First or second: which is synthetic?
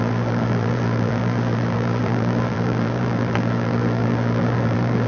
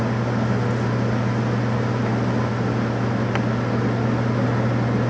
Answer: first